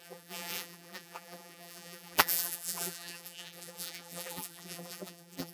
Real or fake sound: fake